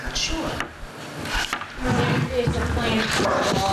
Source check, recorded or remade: recorded